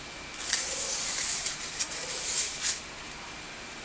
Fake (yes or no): yes